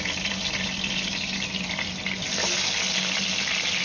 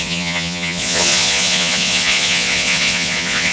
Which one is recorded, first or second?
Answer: first